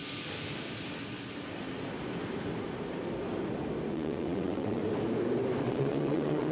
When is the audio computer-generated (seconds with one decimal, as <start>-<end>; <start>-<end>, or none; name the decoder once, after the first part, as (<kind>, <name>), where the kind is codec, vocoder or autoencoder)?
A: 3.9-4.8 (vocoder, WaveNeXt); 5.6-6.5